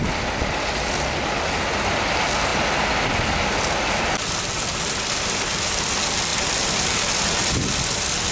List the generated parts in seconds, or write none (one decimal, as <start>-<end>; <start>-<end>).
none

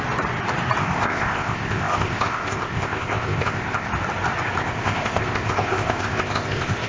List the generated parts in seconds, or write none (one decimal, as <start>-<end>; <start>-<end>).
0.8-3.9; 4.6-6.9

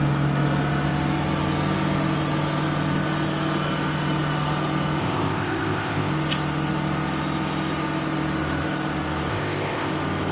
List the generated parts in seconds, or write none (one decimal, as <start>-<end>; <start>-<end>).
5.0-6.1; 9.3-9.9